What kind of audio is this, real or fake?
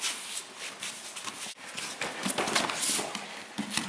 real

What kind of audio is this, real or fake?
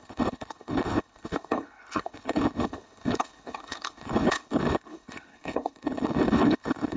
fake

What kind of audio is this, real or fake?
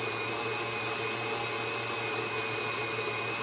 real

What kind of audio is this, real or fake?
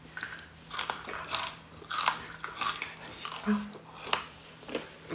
real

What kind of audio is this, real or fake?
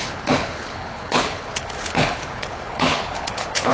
fake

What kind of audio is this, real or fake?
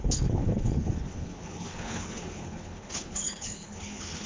fake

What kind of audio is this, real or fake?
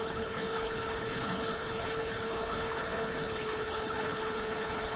fake